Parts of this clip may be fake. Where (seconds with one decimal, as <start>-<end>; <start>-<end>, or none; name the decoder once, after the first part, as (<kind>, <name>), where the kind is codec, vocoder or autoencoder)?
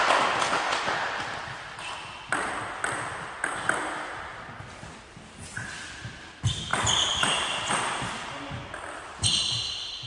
none